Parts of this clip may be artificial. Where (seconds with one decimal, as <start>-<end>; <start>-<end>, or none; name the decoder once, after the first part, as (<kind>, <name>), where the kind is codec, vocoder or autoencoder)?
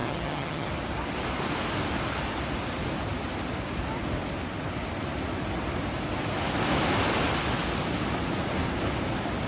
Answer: 0.0-0.7 (vocoder, HiFi-GAN)